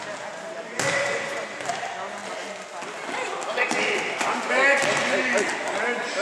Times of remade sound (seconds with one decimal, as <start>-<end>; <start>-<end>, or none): none